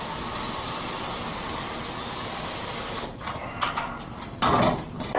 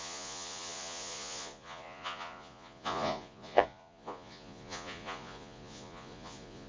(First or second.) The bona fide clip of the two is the first